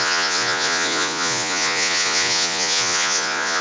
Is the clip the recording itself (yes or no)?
no